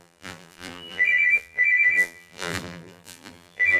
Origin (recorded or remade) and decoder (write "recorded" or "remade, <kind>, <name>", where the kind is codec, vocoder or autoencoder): remade, vocoder, BigVGAN v2